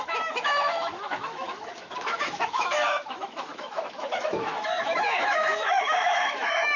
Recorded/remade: remade